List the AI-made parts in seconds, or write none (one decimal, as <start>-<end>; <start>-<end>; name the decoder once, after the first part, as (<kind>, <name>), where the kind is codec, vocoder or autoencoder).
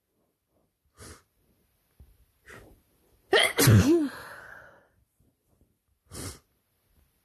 none